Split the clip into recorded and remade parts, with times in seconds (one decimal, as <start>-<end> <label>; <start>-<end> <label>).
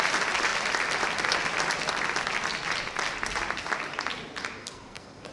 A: 0.0-4.6 recorded; 4.6-5.3 remade